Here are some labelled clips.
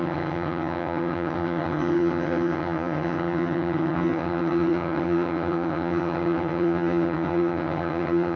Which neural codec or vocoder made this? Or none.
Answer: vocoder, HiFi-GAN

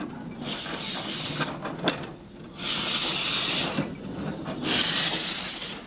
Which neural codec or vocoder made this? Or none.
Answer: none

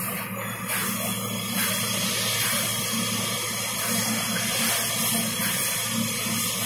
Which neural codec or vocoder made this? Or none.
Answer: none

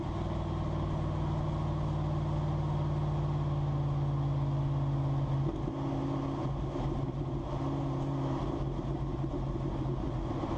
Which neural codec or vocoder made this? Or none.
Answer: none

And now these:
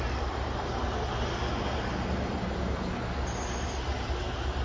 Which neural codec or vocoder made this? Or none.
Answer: none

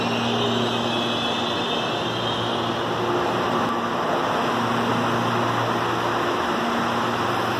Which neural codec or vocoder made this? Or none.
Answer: none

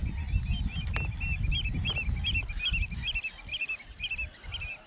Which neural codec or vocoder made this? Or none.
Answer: none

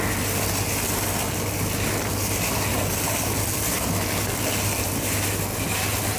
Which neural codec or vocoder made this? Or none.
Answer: none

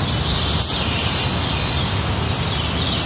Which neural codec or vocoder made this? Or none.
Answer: none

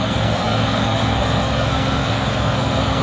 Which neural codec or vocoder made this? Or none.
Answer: codec, SNAC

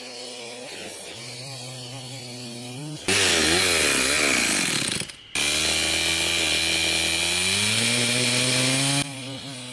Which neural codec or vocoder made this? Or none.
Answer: none